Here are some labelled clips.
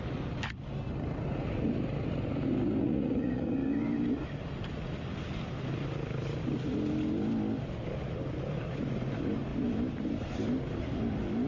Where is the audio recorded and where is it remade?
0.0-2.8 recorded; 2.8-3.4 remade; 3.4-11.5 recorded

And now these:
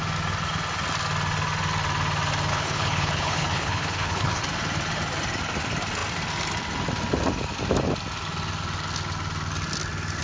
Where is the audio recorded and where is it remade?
0.0-2.5 recorded; 2.5-4.4 remade; 4.4-10.2 recorded

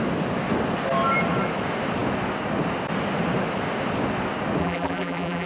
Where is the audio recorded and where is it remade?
0.0-4.6 recorded; 4.6-5.5 remade